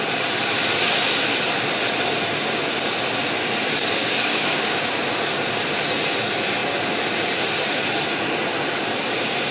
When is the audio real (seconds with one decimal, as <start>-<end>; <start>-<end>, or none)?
0.0-4.0; 4.8-9.5